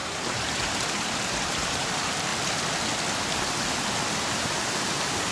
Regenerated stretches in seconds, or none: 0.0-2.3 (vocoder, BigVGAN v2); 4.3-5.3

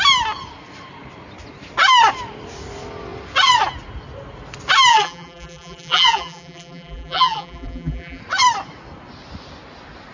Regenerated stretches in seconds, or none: 4.9-8.2 (vocoder, BigVGAN v2)

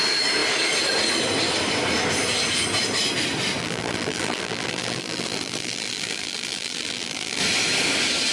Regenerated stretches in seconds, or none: 3.6-7.4 (vocoder, BigVGAN v2)

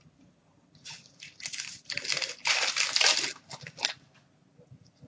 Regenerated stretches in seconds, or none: none

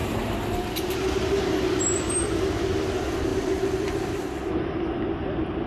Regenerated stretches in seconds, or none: 3.3-4.5 (vocoder, BigVGAN v2)

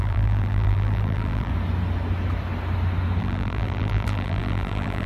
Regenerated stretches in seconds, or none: 0.0-1.5 (vocoder, BigVGAN v2); 3.2-5.1

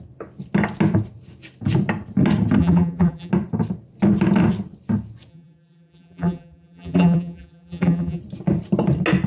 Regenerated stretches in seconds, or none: 2.6-3.3 (vocoder, BigVGAN v2); 5.3-8.2